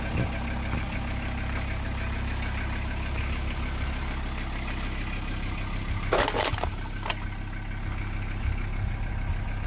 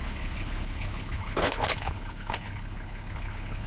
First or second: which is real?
first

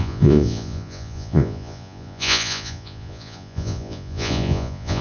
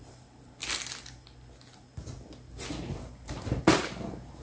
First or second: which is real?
second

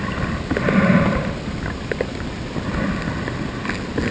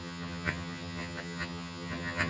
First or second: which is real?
first